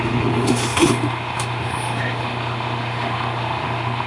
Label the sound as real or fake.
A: fake